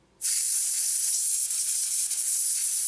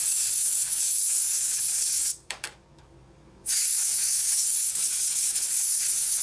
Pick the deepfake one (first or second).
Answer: second